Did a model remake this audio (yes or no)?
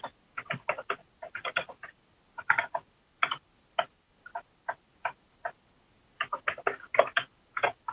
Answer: no